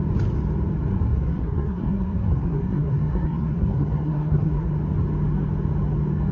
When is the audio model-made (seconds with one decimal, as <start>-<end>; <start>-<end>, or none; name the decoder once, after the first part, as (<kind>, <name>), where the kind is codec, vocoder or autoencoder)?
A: 0.9-4.7 (codec, SNAC)